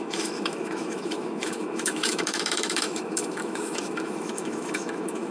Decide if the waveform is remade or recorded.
remade